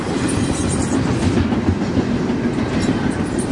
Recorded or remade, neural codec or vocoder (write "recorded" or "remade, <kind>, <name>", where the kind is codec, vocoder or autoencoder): recorded